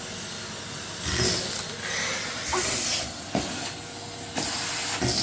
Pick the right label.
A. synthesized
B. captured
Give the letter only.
B